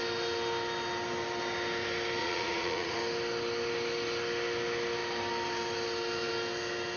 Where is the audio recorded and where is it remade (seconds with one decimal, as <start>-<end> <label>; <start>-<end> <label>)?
0.0-2.2 recorded; 2.2-3.0 remade; 3.0-7.0 recorded